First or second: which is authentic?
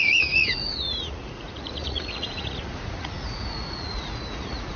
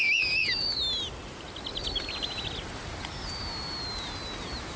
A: second